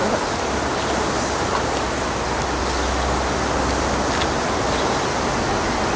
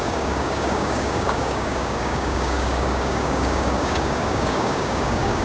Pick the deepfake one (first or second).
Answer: second